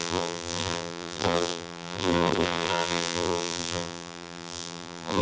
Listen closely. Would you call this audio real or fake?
fake